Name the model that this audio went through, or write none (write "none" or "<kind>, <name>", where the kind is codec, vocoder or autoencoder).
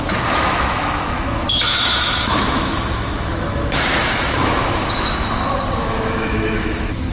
autoencoder, DAC-VAE